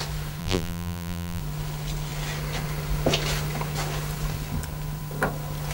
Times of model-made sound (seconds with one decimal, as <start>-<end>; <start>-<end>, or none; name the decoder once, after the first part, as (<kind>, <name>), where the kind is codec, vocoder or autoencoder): 0.4-1.4 (vocoder, BigVGAN v2)